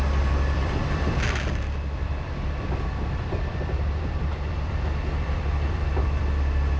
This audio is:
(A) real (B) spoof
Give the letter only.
B